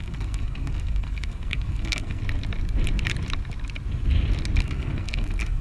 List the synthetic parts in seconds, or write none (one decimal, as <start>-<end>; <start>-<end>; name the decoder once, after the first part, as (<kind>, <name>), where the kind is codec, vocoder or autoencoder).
0.0-2.2 (codec, SNAC); 4.6-5.6